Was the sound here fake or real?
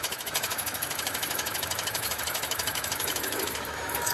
fake